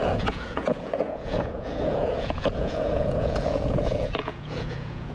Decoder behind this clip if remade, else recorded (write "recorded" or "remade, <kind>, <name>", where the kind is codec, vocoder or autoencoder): remade, vocoder, Vocos